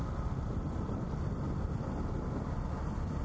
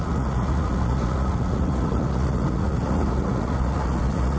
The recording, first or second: first